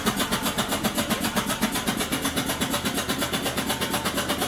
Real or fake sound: real